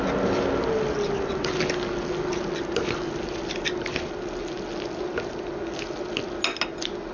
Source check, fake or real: real